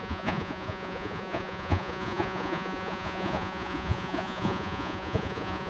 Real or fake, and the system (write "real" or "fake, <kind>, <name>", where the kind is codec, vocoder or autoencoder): fake, vocoder, Vocos